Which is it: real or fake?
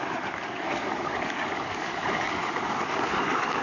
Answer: fake